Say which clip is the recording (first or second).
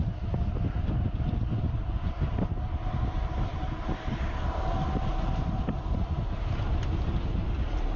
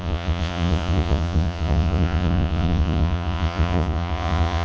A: first